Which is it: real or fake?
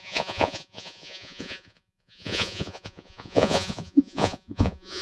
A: fake